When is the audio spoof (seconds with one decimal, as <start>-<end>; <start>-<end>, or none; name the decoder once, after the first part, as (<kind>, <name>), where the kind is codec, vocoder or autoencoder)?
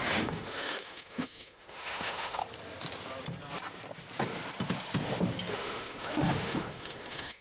0.0-2.4 (autoencoder, DAC-VAE); 5.5-7.4